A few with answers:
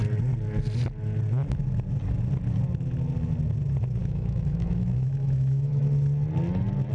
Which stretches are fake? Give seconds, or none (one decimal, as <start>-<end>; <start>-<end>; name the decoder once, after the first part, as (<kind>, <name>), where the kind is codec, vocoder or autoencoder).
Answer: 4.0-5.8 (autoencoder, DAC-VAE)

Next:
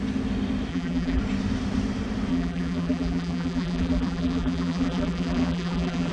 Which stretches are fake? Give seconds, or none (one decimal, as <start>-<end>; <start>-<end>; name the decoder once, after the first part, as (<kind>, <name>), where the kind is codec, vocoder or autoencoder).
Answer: 0.7-1.2 (vocoder, BigVGAN v2); 2.3-6.1

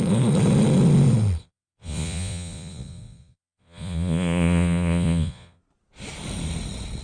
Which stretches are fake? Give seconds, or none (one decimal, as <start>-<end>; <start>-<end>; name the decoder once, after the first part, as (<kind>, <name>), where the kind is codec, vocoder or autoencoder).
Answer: 1.4-5.6 (vocoder, Vocos)

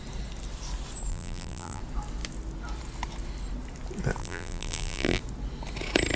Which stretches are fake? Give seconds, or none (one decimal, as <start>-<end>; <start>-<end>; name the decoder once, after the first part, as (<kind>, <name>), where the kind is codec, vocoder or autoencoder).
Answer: 1.1-1.8 (vocoder, BigVGAN v2); 4.2-5.2

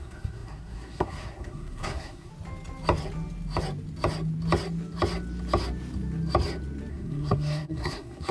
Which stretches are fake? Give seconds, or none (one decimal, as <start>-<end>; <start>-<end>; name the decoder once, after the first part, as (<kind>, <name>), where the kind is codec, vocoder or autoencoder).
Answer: 0.0-2.3 (codec, SNAC); 6.9-8.3